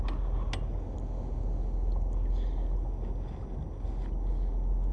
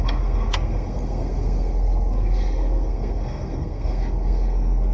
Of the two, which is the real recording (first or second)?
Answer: first